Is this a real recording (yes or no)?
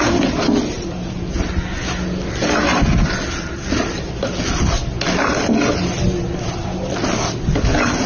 yes